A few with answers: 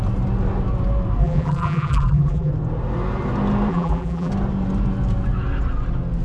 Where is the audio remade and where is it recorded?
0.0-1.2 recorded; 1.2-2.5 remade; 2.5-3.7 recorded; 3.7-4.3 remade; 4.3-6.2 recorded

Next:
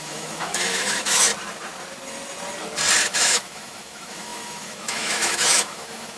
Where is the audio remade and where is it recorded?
0.0-1.3 remade; 1.3-3.0 recorded; 3.0-6.2 remade

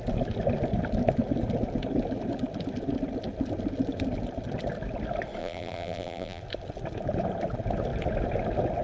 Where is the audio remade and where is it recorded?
0.0-5.4 recorded; 5.4-6.4 remade; 6.4-8.8 recorded

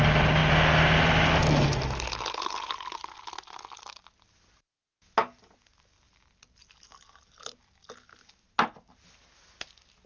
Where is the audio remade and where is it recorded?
0.0-10.1 recorded

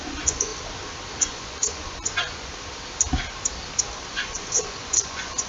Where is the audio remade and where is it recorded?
0.0-0.5 remade; 0.5-1.2 recorded; 1.2-2.5 remade; 2.5-4.1 recorded; 4.1-5.5 remade

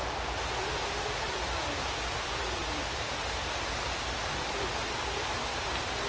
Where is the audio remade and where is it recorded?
0.0-6.1 recorded

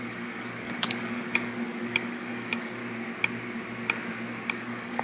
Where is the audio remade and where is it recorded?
0.0-2.8 remade; 2.8-4.5 recorded; 4.5-5.0 remade